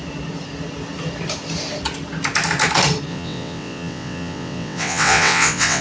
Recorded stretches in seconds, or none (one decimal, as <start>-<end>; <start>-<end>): 0.0-3.1